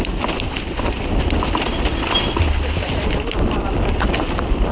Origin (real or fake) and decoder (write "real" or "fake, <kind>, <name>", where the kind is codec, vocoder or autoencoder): real